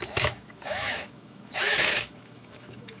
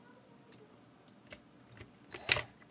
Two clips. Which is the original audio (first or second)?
second